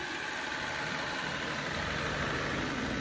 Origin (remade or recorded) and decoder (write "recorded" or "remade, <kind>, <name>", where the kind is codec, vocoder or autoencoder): recorded